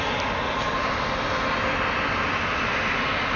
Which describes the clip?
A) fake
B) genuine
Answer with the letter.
B